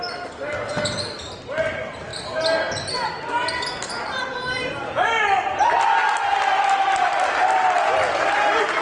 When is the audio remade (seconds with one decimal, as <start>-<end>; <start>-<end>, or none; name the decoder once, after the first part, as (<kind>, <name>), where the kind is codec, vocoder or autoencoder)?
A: none